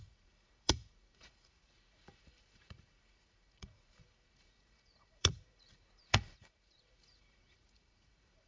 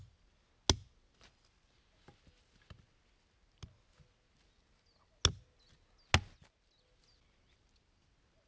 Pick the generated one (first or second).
first